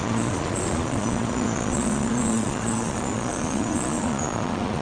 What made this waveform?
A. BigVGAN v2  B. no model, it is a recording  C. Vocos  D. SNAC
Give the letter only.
C